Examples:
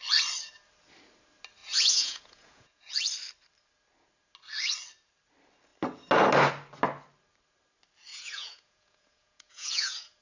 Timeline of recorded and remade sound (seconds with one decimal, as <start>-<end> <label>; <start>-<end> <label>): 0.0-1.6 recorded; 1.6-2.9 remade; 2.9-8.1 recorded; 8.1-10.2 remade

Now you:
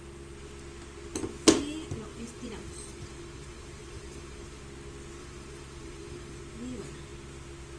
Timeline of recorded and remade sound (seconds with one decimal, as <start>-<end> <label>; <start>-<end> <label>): 0.0-2.1 recorded; 2.1-4.6 remade; 4.6-5.2 recorded; 5.2-6.4 remade; 6.4-7.8 recorded

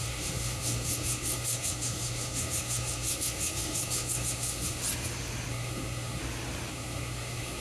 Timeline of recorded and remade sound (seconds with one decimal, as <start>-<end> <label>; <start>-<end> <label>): 0.0-4.8 remade; 4.8-5.5 recorded; 5.5-6.2 remade; 6.2-6.7 recorded; 6.7-7.6 remade

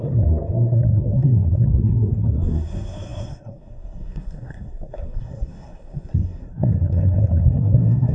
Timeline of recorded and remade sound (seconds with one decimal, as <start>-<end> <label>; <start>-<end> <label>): 0.0-8.1 remade

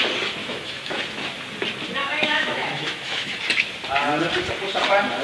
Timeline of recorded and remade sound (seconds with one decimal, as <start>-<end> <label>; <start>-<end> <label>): 0.0-0.4 recorded; 0.4-1.0 remade; 1.0-2.0 recorded; 2.0-3.4 remade; 3.4-5.2 recorded

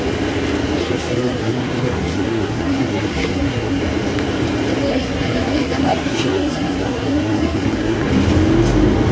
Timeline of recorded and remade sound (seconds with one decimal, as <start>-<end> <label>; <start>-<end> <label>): 0.0-0.8 recorded; 0.8-3.8 remade; 3.8-4.9 recorded; 4.9-8.1 remade; 8.1-9.1 recorded

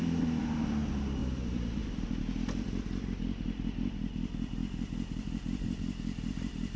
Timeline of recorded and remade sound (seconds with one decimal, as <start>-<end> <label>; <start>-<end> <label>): 0.0-6.8 recorded